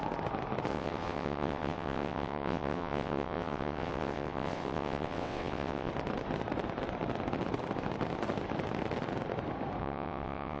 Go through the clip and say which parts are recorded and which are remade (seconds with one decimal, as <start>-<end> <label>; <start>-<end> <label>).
0.0-0.7 recorded; 0.7-5.9 remade; 5.9-9.8 recorded; 9.8-10.6 remade